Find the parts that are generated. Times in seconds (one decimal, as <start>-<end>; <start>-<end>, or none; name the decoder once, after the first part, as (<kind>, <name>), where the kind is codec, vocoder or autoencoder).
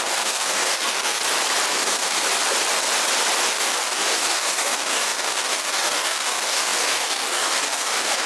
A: 0.0-1.2 (codec, DAC); 1.7-2.2; 3.5-8.3